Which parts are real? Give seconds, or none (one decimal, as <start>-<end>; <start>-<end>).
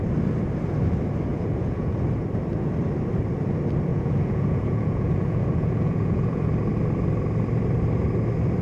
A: 0.0-1.3; 1.9-3.9; 6.4-8.6